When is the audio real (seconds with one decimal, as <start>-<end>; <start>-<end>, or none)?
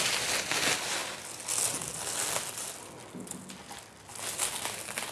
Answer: 0.0-5.1